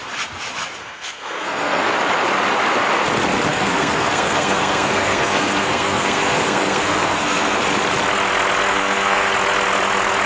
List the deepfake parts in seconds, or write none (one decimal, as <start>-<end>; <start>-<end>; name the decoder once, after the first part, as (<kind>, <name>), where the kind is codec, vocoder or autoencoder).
0.8-1.9 (codec, SNAC); 3.5-7.6; 8.7-9.3